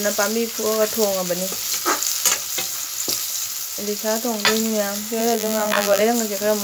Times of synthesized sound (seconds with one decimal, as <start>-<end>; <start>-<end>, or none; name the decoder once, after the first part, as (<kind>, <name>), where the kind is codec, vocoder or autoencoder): 5.2-6.0 (vocoder, BigVGAN v2)